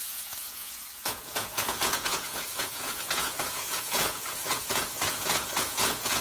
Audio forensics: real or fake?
fake